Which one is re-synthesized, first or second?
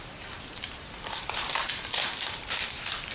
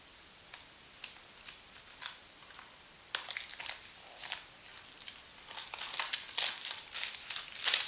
first